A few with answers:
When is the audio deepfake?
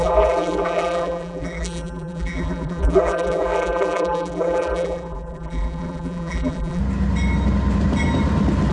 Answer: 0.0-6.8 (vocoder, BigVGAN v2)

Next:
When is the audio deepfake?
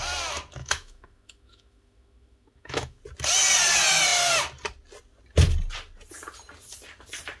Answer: 0.6-3.0 (autoencoder, DAC-VAE)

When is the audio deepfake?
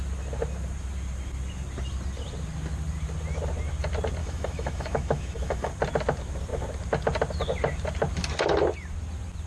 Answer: 4.2-5.7 (autoencoder, DAC-VAE)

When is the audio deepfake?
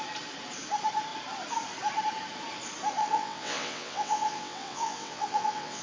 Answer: 3.0-5.8 (vocoder, WaveNeXt)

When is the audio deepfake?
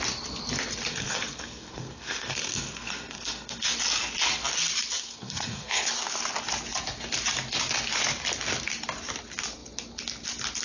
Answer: 0.9-3.6 (codec, SNAC); 5.1-5.9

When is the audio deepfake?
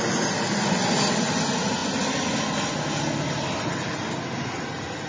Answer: none